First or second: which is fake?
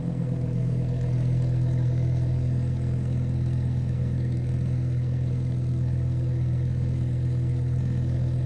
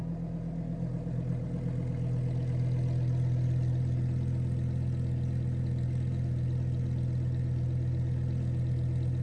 first